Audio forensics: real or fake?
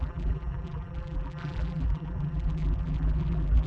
fake